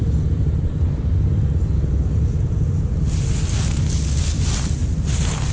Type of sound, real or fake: real